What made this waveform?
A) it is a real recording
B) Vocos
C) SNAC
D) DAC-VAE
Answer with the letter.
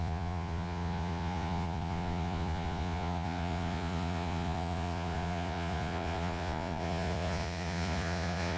B